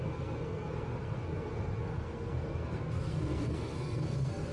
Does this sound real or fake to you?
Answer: fake